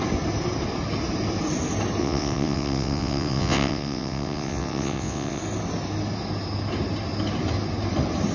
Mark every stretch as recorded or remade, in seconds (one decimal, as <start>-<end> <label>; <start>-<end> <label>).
0.0-2.0 recorded; 2.0-5.4 remade; 5.4-8.3 recorded